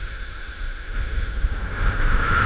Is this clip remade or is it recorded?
remade